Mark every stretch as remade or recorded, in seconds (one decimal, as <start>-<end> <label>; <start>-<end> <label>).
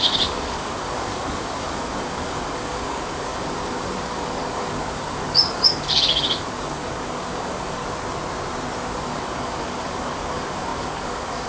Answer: 0.0-7.8 remade; 7.8-9.0 recorded; 9.0-11.5 remade